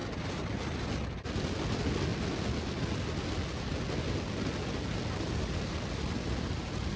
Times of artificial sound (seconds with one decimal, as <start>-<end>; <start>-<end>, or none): none